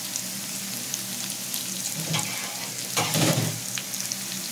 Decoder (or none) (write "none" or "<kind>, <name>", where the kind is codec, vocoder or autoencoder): none